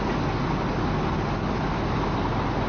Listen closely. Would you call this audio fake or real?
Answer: real